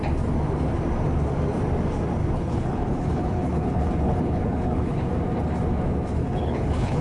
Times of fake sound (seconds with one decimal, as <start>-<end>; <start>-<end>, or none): 2.2-5.1; 6.2-7.0